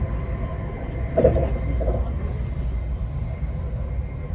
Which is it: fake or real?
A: real